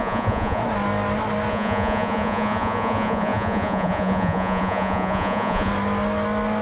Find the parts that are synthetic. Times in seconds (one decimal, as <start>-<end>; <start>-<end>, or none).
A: 0.0-0.6; 1.5-5.7